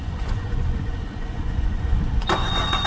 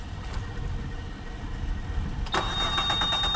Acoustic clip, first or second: second